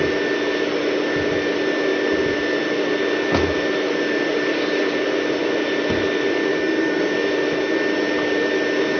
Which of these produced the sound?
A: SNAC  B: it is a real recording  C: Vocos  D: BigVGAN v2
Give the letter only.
B